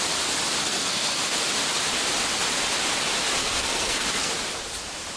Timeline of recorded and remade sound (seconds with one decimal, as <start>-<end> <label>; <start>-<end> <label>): 0.0-0.6 recorded; 0.6-1.2 remade; 1.2-3.4 recorded; 3.4-4.3 remade; 4.3-5.2 recorded